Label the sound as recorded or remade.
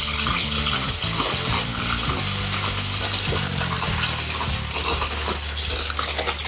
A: recorded